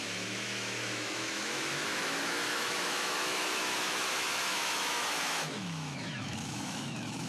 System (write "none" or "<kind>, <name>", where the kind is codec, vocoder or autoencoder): autoencoder, DAC-VAE